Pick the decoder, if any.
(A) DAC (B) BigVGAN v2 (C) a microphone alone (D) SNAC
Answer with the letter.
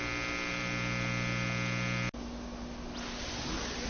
C